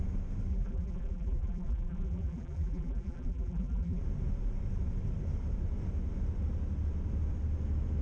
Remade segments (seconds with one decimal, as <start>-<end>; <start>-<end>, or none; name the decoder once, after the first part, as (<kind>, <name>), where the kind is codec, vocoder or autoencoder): 0.5-4.0 (vocoder, BigVGAN v2)

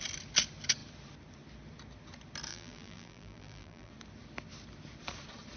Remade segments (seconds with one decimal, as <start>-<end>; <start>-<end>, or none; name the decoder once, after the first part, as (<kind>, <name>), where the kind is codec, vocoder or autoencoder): 2.5-3.9 (vocoder, BigVGAN v2)

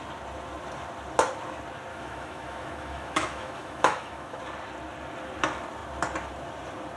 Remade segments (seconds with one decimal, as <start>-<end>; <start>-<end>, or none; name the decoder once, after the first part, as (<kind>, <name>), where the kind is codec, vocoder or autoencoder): 1.9-4.4 (autoencoder, DAC-VAE)

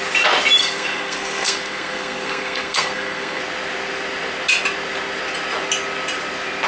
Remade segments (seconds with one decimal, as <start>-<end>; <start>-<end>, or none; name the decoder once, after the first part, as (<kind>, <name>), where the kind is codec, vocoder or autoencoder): 0.6-3.4 (codec, SNAC)